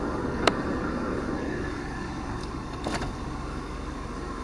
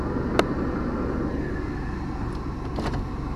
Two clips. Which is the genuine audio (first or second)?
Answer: second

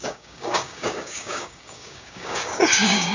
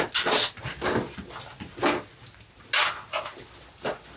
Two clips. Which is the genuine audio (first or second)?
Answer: second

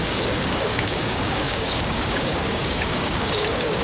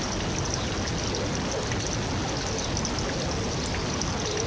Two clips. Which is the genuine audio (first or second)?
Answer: second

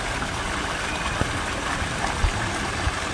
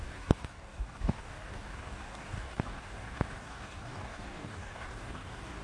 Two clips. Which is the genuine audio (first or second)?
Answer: first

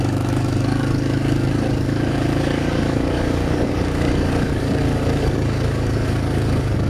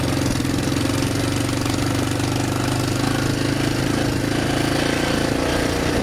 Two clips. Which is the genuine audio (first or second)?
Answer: second